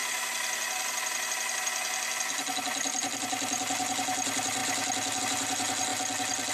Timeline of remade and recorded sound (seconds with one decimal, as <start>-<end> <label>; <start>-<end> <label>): 0.0-6.5 recorded